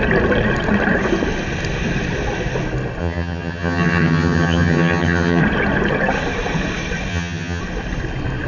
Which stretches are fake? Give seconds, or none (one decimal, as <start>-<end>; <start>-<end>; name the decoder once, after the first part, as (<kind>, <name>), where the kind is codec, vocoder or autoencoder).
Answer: 3.0-5.4 (vocoder, HiFi-GAN); 7.1-7.6